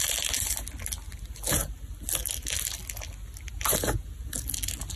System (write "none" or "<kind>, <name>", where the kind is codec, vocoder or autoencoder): none